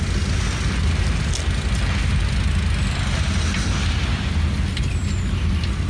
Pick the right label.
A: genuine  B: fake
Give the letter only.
A